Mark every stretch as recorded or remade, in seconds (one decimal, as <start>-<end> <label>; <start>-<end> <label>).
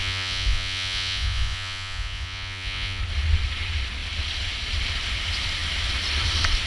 0.0-3.0 remade; 3.0-6.7 recorded